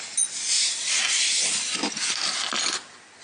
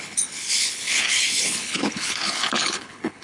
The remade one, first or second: second